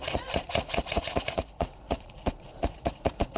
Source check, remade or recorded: remade